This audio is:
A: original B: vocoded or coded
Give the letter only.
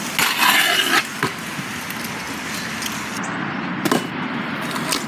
A